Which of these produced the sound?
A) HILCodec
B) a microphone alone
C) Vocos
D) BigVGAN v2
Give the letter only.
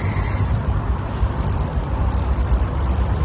D